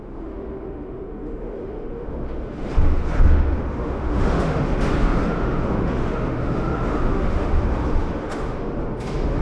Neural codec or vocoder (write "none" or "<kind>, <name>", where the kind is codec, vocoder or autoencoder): autoencoder, DAC-VAE